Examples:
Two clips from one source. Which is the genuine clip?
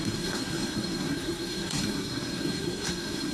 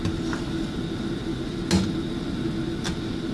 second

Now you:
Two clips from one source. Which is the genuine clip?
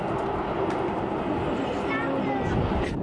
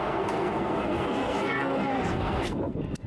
first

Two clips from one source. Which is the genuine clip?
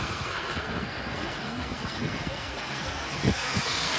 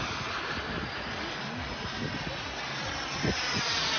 second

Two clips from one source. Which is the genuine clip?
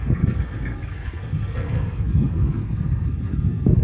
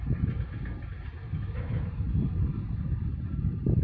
second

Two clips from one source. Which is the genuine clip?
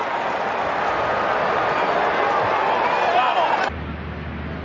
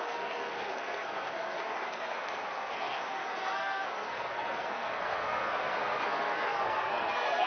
first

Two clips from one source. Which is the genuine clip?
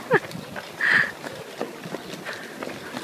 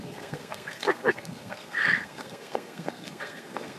first